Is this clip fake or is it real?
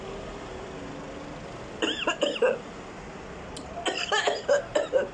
real